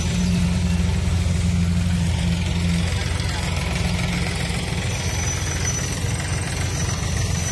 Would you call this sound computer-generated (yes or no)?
no